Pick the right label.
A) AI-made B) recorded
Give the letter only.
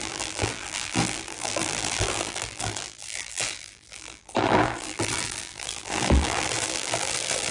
A